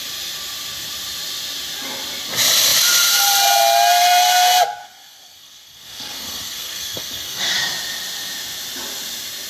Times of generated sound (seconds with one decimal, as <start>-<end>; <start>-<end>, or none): 4.8-7.4